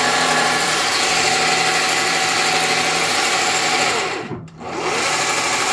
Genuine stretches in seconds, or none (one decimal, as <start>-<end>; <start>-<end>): 1.5-3.1; 4.3-5.1